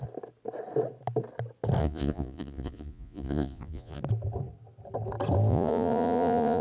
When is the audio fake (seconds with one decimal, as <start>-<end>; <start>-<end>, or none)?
1.8-4.0; 5.5-6.6